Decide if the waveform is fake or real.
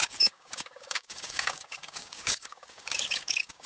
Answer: fake